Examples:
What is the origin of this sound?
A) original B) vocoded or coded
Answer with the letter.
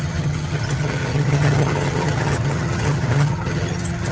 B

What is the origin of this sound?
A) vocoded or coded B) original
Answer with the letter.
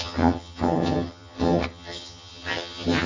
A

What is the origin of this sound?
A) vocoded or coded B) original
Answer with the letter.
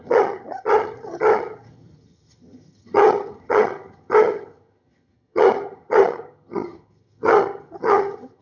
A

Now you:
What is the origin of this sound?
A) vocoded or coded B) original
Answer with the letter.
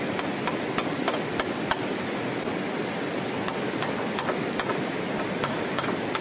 B